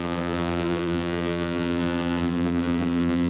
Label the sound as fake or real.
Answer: fake